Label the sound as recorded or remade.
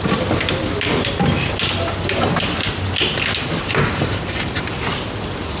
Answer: recorded